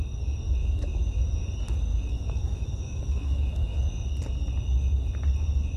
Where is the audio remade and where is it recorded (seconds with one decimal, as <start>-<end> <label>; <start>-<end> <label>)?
0.0-0.6 recorded; 0.6-1.2 remade; 1.2-1.9 recorded; 1.9-3.8 remade; 3.8-5.8 recorded